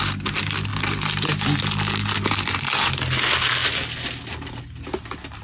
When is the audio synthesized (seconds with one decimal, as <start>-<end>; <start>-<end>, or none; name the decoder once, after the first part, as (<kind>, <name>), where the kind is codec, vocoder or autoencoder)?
none